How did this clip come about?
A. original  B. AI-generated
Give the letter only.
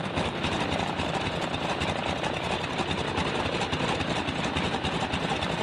A